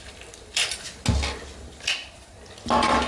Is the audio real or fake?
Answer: real